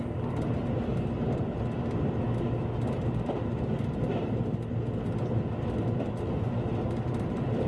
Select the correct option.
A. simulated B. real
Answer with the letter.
B